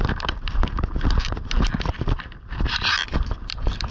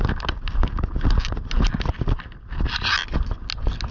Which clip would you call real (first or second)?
second